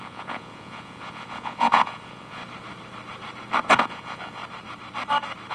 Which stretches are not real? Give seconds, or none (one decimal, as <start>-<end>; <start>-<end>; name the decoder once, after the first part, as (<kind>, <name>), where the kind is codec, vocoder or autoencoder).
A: 0.0-2.4 (vocoder, Vocos); 3.8-4.4